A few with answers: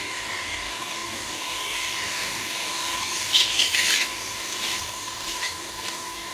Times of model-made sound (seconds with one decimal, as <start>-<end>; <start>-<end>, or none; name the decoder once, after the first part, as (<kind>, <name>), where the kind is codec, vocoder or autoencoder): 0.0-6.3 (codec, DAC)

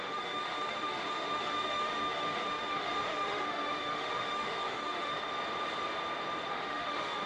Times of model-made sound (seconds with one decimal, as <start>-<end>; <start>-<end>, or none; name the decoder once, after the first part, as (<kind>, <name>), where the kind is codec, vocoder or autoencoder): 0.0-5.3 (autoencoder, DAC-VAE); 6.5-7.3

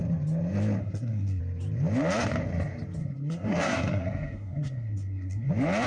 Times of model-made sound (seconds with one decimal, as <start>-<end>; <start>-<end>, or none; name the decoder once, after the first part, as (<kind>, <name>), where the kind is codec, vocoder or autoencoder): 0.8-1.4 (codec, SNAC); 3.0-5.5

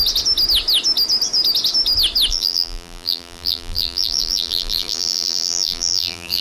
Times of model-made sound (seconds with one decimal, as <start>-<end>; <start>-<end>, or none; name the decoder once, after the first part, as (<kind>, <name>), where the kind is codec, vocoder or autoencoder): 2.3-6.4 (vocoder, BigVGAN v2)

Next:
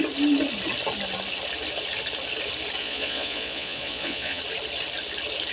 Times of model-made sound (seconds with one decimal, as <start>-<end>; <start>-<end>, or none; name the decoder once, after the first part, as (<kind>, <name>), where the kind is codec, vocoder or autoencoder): 2.8-4.4 (vocoder, Vocos)

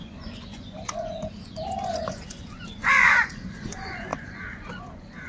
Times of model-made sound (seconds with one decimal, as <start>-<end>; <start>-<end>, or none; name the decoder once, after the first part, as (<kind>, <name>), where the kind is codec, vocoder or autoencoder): 0.0-5.3 (vocoder, Vocos)

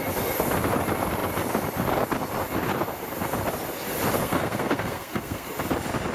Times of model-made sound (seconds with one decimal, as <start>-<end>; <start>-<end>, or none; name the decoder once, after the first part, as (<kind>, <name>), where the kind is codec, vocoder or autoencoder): 4.2-5.5 (codec, SNAC)